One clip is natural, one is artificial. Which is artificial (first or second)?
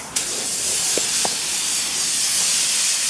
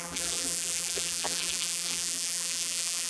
second